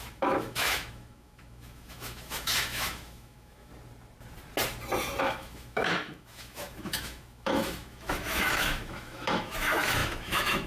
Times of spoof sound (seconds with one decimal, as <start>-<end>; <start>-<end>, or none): 0.0-3.7; 5.2-10.7